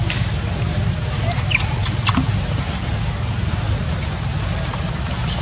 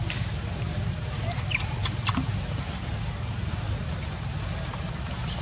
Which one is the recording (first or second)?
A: first